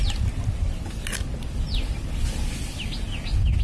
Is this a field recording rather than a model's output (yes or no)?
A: yes